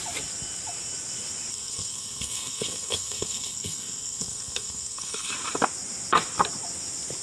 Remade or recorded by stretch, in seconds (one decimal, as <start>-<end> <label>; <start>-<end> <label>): 0.0-1.5 recorded; 1.5-5.3 remade; 5.3-7.2 recorded